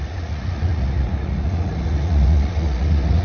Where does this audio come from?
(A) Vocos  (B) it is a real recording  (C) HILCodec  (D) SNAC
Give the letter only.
A